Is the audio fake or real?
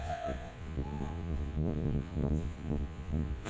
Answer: fake